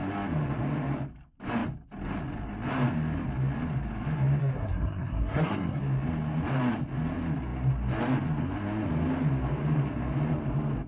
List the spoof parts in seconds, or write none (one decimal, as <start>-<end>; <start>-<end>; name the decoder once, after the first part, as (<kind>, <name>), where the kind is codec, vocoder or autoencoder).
4.4-5.8 (codec, SNAC)